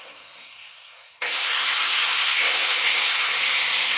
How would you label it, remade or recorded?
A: remade